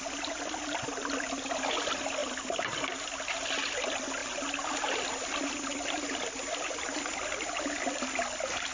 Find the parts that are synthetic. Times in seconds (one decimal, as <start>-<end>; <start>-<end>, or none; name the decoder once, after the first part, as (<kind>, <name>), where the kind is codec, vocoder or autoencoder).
none